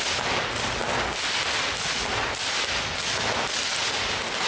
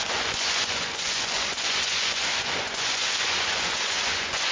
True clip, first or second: first